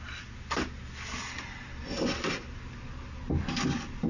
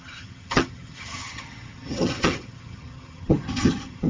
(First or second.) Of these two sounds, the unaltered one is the first